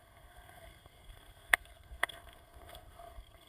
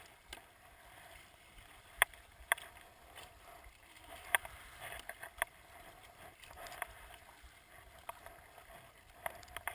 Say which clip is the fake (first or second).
first